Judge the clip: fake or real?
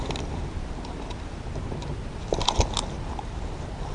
real